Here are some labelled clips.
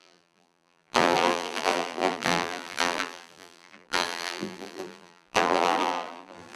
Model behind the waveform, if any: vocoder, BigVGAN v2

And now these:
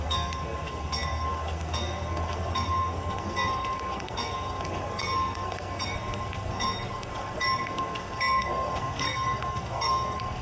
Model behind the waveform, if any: codec, SNAC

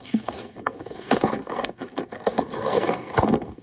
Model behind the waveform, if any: codec, SNAC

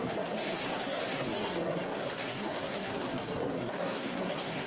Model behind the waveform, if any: codec, SNAC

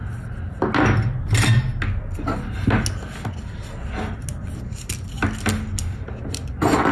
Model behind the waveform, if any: none